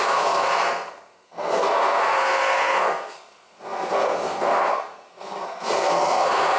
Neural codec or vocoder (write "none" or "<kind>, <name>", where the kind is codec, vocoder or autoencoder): codec, SNAC